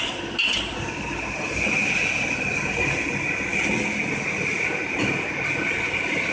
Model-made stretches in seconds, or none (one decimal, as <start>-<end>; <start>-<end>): none